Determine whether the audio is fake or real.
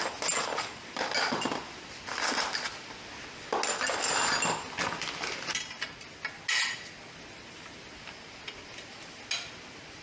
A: real